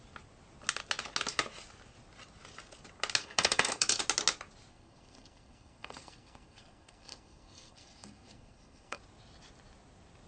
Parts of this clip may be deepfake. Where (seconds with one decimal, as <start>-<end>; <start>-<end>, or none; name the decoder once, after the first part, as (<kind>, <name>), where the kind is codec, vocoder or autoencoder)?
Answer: 3.2-4.0 (codec, SNAC); 4.7-9.0